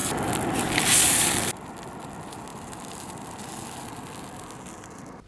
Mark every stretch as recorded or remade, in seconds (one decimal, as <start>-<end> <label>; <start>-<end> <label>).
0.0-2.5 recorded; 2.5-3.5 remade; 3.5-5.3 recorded